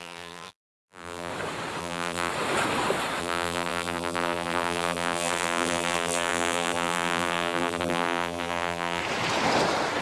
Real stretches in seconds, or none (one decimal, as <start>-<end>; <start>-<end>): 1.3-1.8; 2.3-3.2; 9.0-10.0